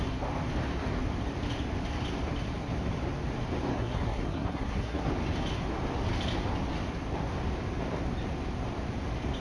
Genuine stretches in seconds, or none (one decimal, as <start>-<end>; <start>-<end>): 0.0-3.7; 5.1-9.4